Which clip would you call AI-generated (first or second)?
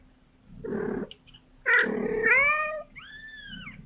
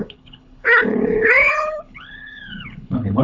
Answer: second